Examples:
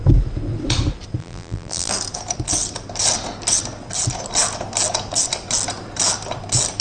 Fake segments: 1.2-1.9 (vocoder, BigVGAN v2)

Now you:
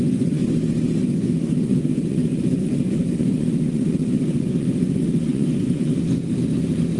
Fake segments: 0.0-0.4 (vocoder, Vocos); 1.0-5.9

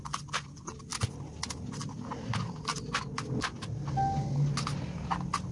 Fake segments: none